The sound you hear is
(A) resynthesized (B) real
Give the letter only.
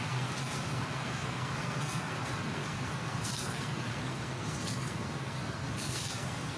A